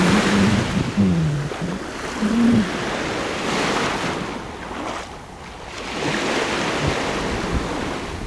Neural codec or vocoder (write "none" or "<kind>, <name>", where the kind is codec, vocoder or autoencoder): none